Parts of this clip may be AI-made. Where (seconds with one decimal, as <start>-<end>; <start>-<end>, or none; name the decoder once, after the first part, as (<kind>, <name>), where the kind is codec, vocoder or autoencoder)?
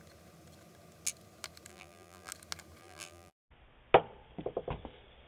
1.7-2.3 (vocoder, BigVGAN v2); 2.8-3.4